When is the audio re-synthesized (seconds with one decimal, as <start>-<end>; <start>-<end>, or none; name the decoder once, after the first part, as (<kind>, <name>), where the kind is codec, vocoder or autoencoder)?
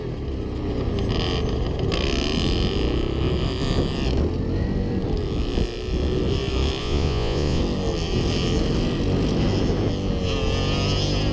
6.8-7.6 (vocoder, Vocos)